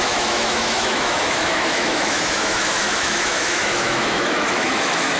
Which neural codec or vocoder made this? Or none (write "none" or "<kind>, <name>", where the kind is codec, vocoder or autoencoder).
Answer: autoencoder, DAC-VAE